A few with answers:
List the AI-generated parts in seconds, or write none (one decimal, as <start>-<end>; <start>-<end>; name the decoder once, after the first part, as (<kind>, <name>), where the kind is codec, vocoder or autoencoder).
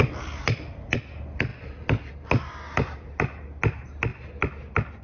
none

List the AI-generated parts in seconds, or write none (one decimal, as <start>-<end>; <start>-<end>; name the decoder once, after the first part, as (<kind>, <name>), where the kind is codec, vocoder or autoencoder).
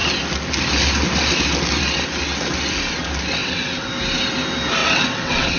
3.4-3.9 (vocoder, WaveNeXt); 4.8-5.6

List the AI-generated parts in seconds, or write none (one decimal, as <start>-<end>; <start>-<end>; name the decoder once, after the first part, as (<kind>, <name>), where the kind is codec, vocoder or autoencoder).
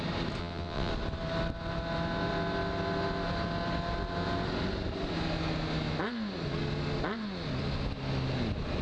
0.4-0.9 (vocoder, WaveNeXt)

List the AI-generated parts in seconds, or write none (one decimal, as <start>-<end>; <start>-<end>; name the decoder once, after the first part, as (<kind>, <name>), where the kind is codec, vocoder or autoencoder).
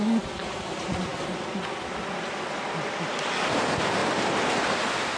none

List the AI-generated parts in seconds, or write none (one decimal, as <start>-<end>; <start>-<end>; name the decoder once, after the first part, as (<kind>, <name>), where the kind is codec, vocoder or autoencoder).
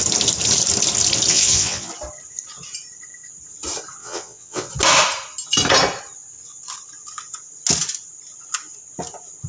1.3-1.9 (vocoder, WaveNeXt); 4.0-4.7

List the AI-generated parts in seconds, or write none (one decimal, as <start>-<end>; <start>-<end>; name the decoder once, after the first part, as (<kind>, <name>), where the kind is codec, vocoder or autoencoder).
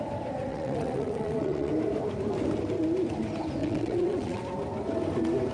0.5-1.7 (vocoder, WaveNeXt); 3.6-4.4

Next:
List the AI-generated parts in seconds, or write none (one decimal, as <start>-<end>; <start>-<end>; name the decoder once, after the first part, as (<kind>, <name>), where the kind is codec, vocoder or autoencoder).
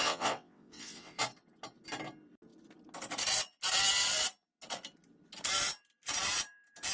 0.0-1.2 (vocoder, WaveNeXt)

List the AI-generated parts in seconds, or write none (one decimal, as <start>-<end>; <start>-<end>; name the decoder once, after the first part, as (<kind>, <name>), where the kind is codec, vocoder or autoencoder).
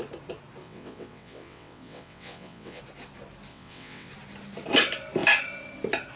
0.6-2.8 (vocoder, WaveNeXt); 3.5-4.1